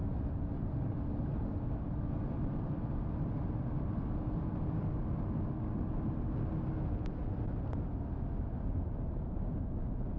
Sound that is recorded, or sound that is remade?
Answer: recorded